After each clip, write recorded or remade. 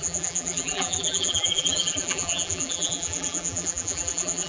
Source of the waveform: remade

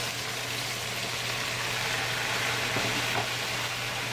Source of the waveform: recorded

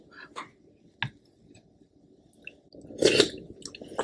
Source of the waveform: recorded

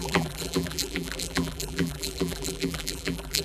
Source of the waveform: remade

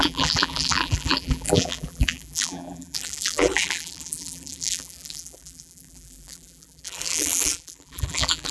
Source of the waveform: remade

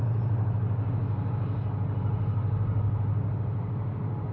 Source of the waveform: recorded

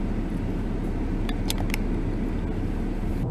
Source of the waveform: recorded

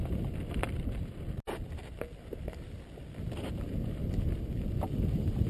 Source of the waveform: recorded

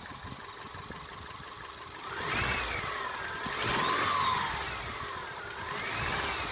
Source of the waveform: recorded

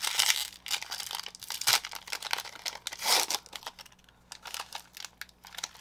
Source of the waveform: recorded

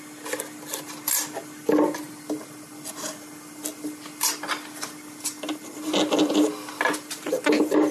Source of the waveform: recorded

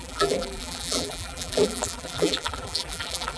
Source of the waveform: remade